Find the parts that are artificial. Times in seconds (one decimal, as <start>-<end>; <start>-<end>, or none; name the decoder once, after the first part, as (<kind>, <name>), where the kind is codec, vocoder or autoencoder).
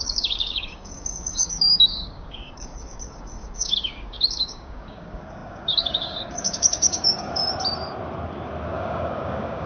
0.0-7.4 (codec, DAC); 8.7-9.7